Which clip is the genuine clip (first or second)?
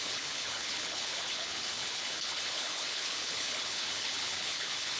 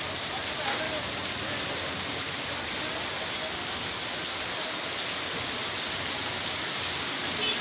second